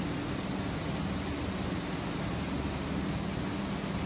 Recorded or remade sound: recorded